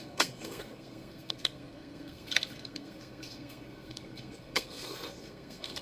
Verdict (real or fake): fake